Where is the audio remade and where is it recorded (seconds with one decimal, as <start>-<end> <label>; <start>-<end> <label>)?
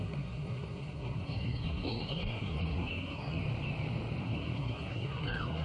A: 0.0-3.4 remade; 3.4-4.2 recorded; 4.2-5.6 remade